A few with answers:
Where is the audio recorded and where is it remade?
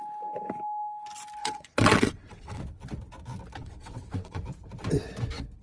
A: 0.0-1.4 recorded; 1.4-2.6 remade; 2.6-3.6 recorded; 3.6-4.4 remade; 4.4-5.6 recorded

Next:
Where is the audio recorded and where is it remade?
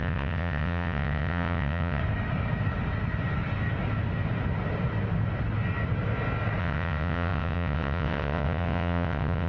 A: 0.0-2.0 remade; 2.0-6.6 recorded; 6.6-9.5 remade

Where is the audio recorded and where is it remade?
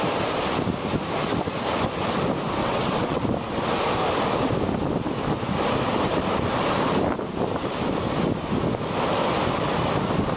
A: 0.0-2.6 recorded; 2.6-3.2 remade; 3.2-10.4 recorded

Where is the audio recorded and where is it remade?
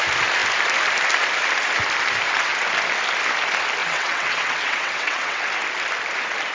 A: 0.0-3.8 recorded; 3.8-5.4 remade; 5.4-6.5 recorded